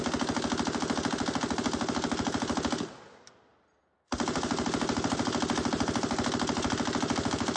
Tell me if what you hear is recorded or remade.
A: recorded